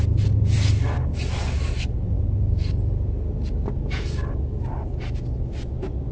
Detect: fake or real real